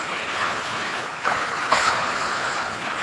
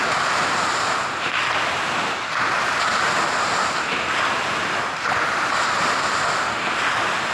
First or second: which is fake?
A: first